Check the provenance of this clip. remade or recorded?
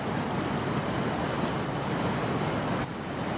recorded